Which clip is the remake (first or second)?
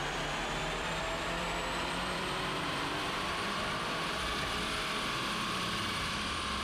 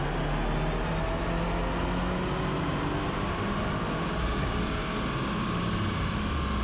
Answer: first